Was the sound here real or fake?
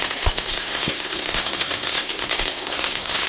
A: fake